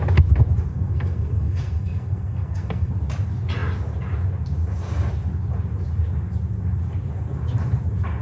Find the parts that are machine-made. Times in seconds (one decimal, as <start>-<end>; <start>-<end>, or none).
0.7-2.9